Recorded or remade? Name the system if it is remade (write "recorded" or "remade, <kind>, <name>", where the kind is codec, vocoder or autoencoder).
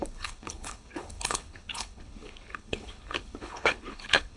remade, codec, HILCodec